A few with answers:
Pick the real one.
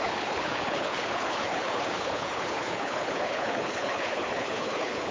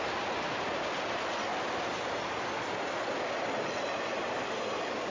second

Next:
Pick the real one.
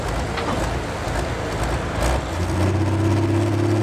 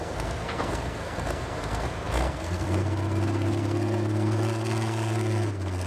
first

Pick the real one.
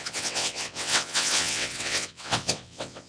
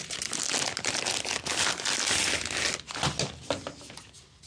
second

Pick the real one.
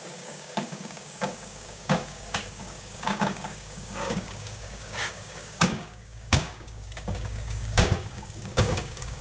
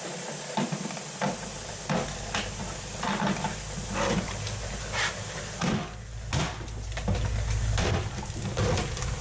second